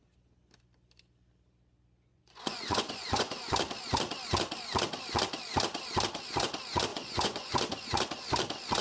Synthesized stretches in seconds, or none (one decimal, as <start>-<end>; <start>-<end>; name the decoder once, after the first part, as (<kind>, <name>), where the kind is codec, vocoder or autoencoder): 2.1-3.5 (vocoder, Vocos); 6.9-7.5